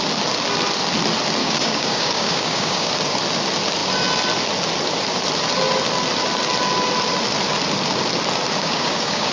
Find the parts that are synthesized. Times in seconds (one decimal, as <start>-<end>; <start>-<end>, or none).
1.4-2.9; 8.6-9.3